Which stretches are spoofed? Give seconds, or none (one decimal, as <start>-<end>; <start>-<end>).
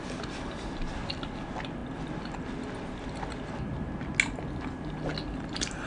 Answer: none